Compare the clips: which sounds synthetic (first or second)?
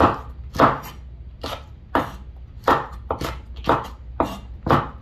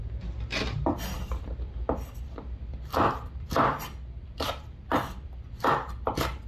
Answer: second